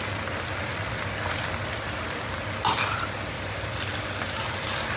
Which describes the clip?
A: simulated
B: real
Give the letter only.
B